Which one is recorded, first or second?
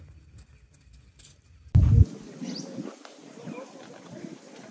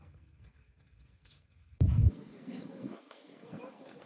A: first